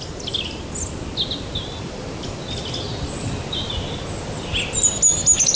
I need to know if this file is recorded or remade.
recorded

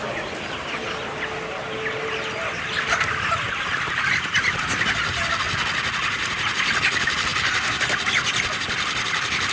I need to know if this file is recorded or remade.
recorded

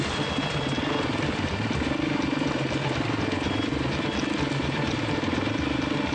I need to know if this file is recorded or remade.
recorded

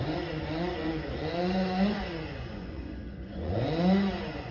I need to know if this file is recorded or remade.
remade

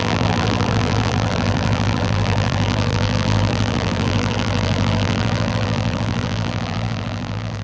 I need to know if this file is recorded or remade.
remade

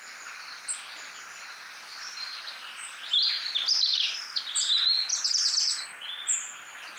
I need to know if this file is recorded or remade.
recorded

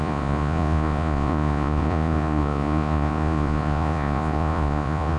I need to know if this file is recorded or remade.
remade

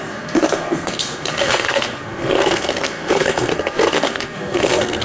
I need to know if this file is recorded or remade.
remade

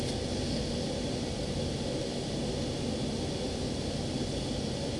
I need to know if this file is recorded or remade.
recorded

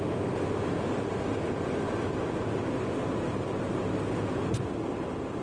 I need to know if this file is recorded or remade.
recorded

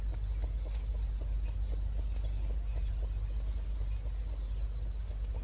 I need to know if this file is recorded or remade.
recorded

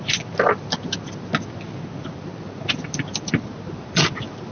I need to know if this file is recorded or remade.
recorded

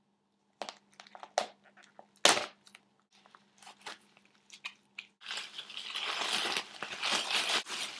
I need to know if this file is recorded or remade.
recorded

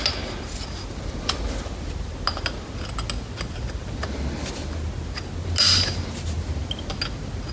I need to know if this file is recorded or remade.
recorded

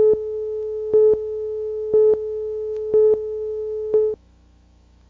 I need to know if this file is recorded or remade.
remade